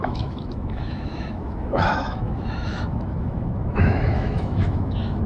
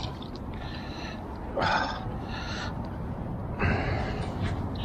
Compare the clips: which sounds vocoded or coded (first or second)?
first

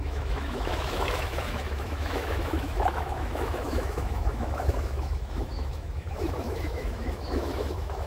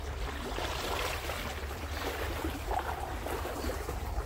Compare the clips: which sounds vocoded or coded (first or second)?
first